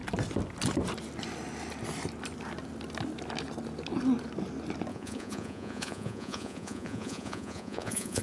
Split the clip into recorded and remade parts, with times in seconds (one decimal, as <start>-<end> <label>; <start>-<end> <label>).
0.0-4.9 recorded; 4.9-8.2 remade